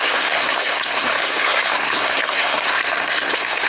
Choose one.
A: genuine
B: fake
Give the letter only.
B